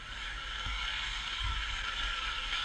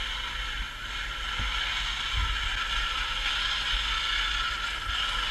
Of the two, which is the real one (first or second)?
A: second